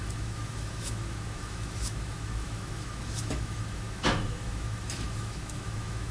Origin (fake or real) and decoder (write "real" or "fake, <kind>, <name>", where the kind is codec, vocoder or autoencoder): fake, autoencoder, DAC-VAE